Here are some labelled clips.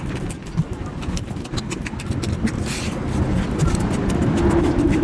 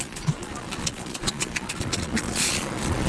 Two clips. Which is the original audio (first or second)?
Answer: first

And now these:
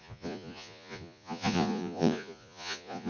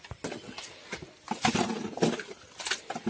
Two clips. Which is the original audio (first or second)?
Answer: second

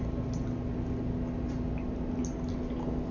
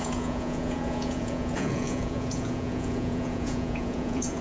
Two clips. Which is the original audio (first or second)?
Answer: first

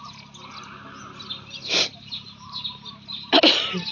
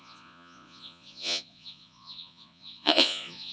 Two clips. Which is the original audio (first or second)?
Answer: first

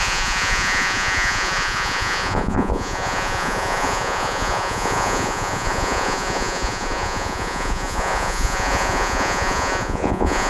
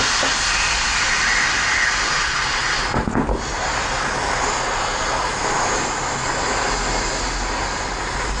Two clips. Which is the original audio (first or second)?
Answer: second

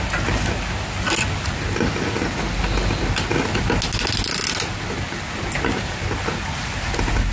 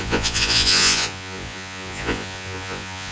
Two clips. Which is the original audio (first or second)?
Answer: first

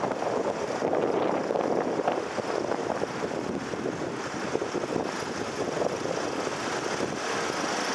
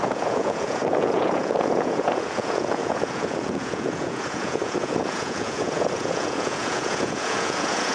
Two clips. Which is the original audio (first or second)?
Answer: first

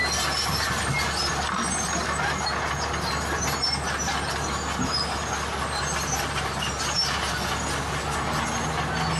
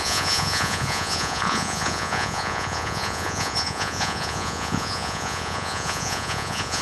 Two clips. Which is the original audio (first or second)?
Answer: first